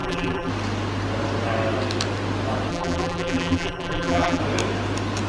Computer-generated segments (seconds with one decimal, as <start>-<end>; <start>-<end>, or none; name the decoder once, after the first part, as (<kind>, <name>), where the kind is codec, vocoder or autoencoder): 0.0-0.5 (vocoder, BigVGAN v2); 2.7-4.4